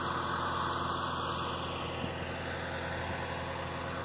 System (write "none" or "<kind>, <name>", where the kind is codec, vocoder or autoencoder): none